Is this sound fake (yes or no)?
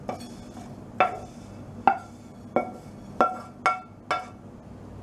no